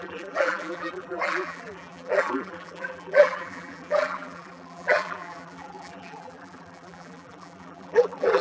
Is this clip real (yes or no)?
no